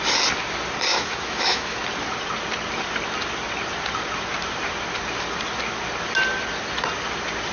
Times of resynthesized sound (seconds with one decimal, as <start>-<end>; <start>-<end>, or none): 0.9-1.8